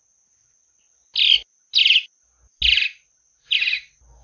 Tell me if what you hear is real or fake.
real